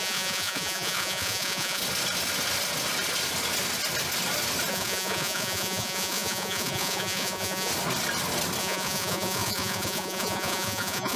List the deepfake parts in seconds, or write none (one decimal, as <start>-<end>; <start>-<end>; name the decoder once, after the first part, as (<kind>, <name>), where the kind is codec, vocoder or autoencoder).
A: 0.0-1.8 (vocoder, Vocos); 4.7-7.7; 8.6-11.2